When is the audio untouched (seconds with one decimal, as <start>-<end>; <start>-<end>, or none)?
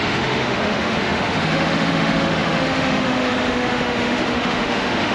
none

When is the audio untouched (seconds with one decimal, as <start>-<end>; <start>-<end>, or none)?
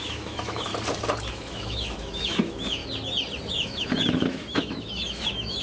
0.7-1.3; 2.8-3.5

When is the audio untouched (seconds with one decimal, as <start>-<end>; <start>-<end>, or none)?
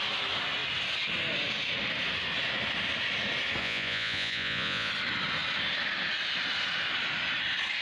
0.0-3.6; 4.9-7.8